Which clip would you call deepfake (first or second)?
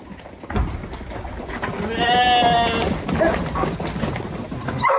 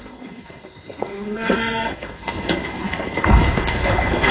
second